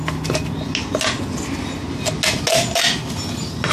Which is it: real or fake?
real